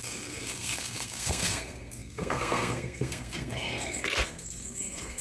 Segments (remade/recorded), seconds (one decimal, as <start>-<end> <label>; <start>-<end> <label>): 0.0-5.2 remade